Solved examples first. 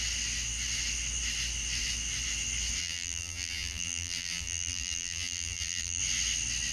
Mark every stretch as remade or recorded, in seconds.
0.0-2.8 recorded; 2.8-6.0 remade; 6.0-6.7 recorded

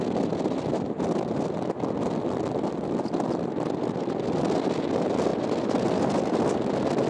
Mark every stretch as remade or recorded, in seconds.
0.0-7.1 recorded

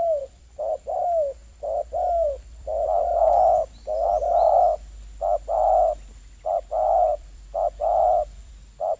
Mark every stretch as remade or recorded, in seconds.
0.0-0.6 remade; 0.6-1.4 recorded; 1.4-3.0 remade; 3.0-7.1 recorded; 7.1-8.5 remade; 8.5-9.0 recorded

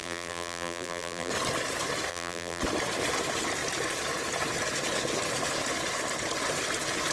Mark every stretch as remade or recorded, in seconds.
0.0-1.3 remade; 1.3-2.1 recorded; 2.1-2.6 remade; 2.6-7.1 recorded